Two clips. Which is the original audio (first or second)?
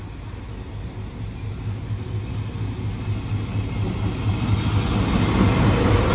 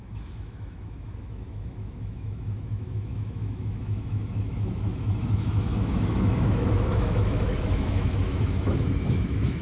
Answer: first